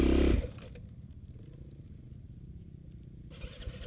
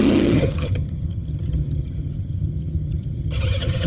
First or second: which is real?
first